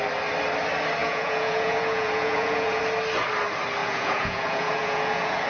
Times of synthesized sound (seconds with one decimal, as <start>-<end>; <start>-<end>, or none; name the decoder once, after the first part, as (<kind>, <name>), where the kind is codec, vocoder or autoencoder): 1.0-2.8 (vocoder, Vocos); 3.8-5.5